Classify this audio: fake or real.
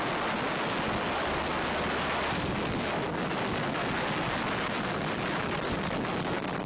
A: real